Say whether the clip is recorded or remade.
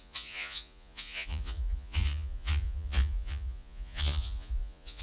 remade